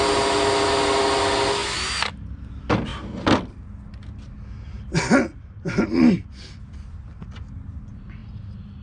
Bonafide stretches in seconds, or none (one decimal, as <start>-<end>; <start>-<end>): 0.0-8.8